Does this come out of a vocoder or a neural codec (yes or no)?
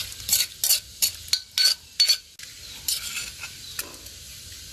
no